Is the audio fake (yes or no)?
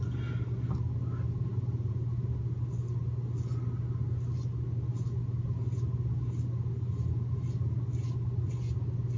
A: no